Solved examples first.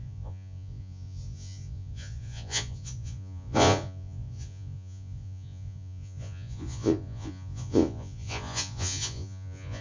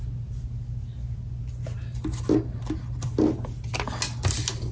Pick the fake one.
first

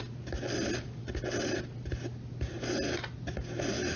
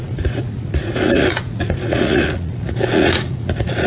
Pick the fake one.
second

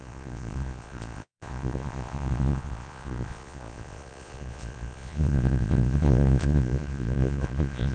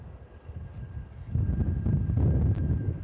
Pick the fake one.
first